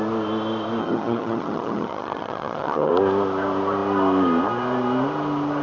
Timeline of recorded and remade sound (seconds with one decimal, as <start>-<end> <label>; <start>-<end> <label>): 0.0-0.8 recorded; 0.8-2.9 remade; 2.9-5.6 recorded